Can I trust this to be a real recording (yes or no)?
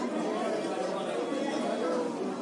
yes